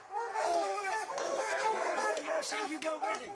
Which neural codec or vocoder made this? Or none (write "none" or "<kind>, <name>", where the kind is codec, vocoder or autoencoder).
codec, SNAC